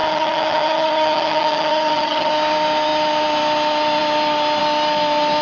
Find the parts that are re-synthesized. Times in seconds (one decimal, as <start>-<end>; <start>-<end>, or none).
0.0-2.3